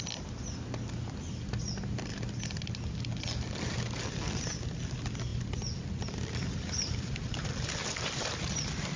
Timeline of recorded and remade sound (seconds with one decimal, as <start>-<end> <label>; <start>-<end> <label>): 0.0-9.0 recorded